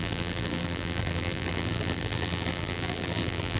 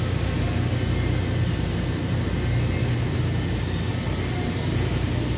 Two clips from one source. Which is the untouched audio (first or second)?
second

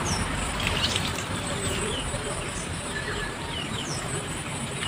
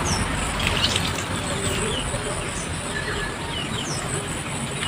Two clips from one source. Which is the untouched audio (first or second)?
second